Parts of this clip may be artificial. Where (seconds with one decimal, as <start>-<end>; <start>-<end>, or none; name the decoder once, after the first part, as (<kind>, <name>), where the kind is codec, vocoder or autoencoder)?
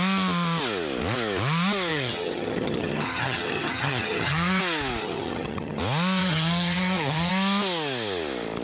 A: 1.9-4.6 (vocoder, HiFi-GAN); 5.0-5.8; 6.2-7.3